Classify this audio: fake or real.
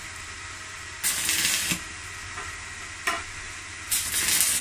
real